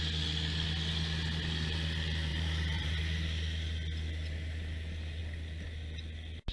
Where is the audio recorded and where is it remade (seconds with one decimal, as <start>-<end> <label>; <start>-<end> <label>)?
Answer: 0.0-2.3 recorded; 2.3-3.0 remade; 3.0-6.5 recorded